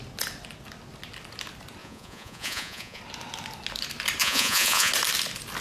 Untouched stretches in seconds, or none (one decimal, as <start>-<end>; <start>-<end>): 0.0-1.8; 3.0-4.2; 4.9-5.6